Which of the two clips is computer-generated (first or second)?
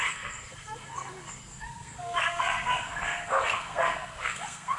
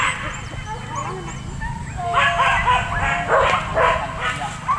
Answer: first